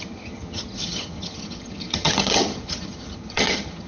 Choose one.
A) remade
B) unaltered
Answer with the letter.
A